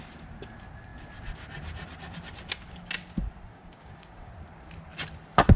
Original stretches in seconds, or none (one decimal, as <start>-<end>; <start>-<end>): 0.0-3.5; 4.3-5.6